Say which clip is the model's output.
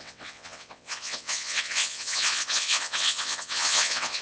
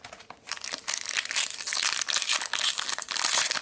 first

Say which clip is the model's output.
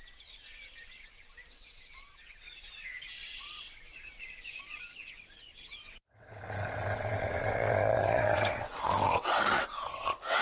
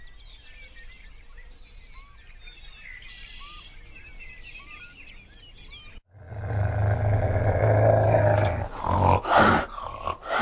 first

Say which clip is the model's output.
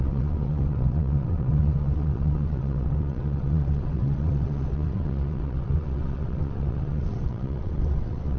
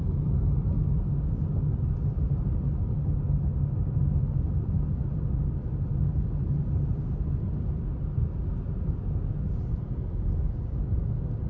first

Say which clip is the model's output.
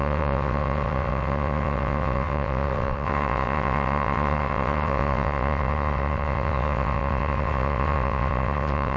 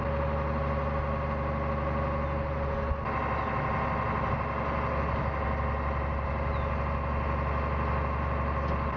first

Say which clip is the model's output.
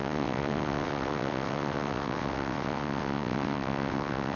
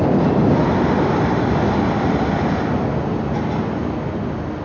first